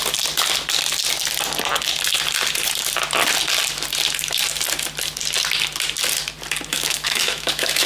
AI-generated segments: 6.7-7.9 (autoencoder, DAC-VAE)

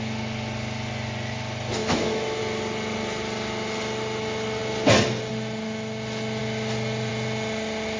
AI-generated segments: 1.8-2.4 (autoencoder, DAC-VAE)

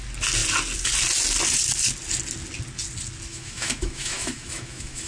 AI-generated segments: 3.3-5.1 (autoencoder, DAC-VAE)